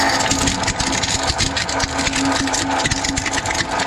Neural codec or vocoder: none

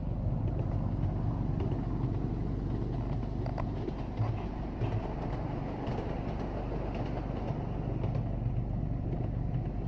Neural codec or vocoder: none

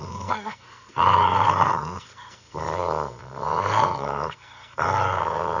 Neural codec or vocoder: codec, SNAC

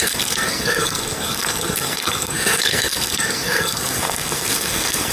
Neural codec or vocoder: codec, SNAC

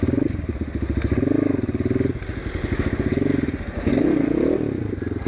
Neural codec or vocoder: none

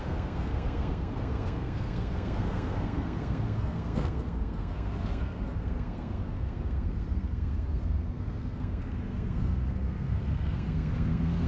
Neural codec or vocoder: codec, SNAC